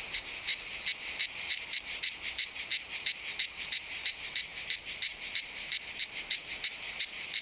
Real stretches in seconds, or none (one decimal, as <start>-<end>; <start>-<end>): 0.5-1.4; 2.7-3.5